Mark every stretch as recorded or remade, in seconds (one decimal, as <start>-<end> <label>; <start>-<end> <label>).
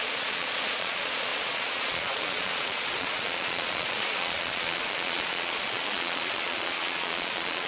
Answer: 0.0-7.7 remade